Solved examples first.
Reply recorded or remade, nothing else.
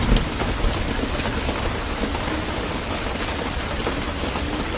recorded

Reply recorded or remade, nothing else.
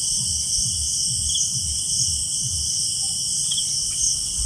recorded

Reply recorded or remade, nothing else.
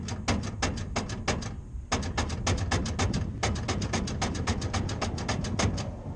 recorded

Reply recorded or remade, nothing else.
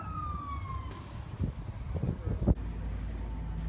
recorded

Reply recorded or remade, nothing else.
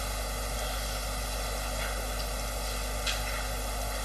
recorded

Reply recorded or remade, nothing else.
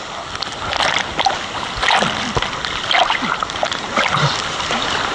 recorded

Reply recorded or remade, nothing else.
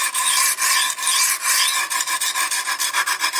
recorded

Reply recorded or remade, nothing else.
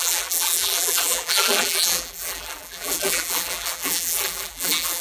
remade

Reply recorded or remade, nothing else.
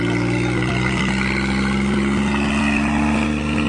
recorded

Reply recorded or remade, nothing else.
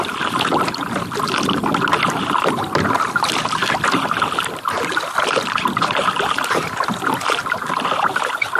recorded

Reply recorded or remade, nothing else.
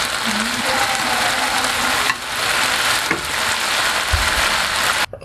recorded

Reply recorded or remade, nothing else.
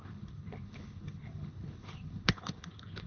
remade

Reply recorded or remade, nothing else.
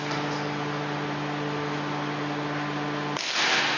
recorded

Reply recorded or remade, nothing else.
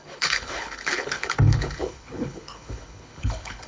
remade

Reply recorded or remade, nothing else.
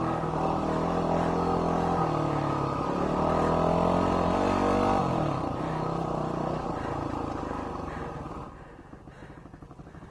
recorded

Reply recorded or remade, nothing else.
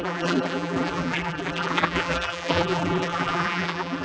remade